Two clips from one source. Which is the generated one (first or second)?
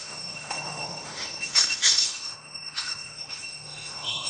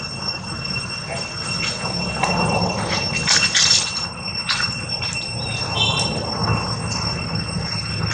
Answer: first